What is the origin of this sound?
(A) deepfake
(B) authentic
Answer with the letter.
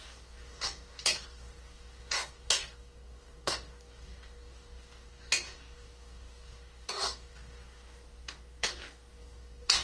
A